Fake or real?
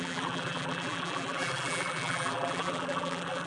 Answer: fake